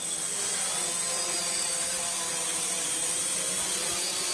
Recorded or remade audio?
recorded